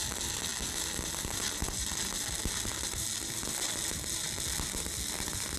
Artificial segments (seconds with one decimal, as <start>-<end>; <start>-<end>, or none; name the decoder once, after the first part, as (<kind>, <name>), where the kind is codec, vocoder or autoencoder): none

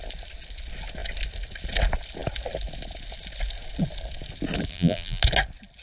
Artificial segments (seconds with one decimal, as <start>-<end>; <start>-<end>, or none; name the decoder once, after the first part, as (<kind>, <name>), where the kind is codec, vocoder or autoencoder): 4.7-5.2 (vocoder, BigVGAN v2)